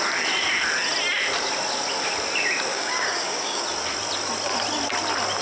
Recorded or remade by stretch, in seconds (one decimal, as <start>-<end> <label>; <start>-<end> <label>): 0.0-2.7 recorded; 2.7-3.6 remade; 3.6-5.4 recorded